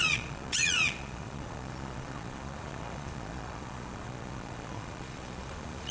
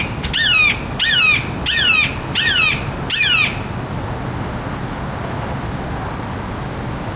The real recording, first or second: second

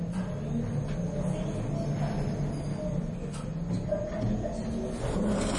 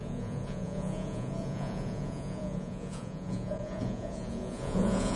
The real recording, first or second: first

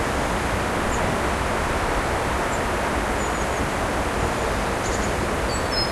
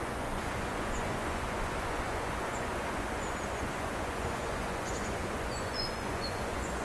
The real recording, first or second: first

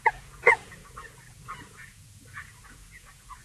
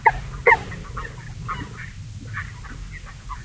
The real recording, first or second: second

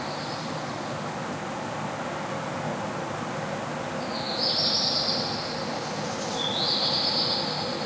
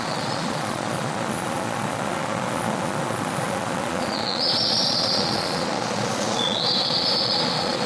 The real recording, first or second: first